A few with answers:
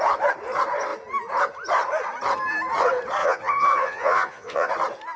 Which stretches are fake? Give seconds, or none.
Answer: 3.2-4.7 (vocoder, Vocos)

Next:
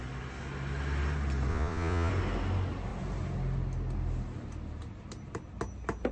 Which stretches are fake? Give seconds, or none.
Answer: 1.5-2.1 (vocoder, Vocos)

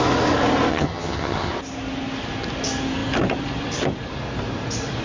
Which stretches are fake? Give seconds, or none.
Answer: 0.7-1.5 (vocoder, HiFi-GAN)

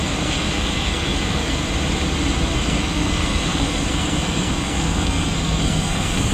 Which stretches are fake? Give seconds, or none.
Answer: 0.0-1.6 (codec, SNAC); 2.5-6.3

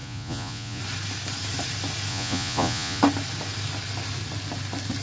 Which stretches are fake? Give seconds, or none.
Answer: 0.0-0.8 (vocoder, Vocos); 2.1-3.0